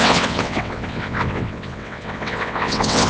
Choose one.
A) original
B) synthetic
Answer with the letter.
B